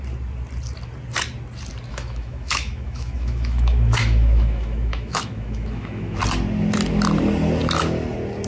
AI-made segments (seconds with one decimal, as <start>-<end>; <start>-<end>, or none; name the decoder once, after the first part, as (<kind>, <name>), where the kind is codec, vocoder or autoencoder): 1.9-6.2 (autoencoder, DAC-VAE)